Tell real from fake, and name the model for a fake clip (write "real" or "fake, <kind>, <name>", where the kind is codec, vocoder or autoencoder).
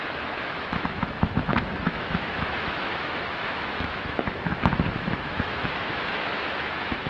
fake, autoencoder, DAC-VAE